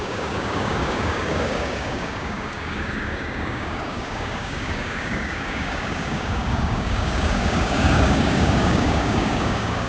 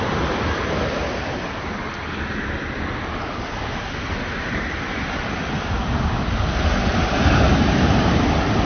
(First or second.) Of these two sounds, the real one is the second